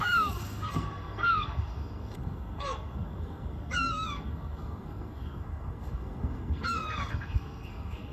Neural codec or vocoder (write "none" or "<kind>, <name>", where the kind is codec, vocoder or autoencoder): codec, SNAC